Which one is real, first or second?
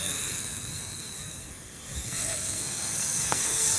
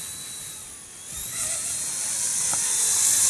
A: second